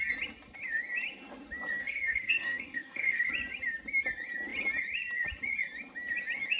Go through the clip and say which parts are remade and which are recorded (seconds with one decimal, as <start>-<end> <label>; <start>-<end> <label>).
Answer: 0.0-1.8 recorded; 1.8-3.3 remade; 3.3-6.6 recorded